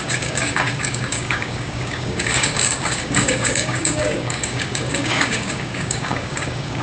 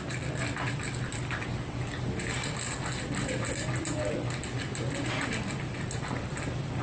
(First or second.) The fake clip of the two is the first